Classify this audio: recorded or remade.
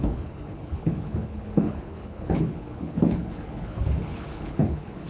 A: remade